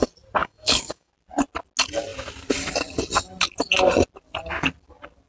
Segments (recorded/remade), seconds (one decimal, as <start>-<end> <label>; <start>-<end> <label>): 0.0-0.4 recorded; 0.4-1.1 remade; 1.1-5.3 recorded